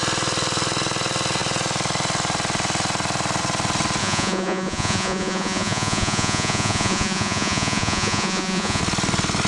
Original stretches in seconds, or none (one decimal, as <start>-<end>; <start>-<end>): 0.0-4.0; 8.8-9.5